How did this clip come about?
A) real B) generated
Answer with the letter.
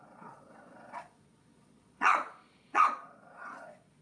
B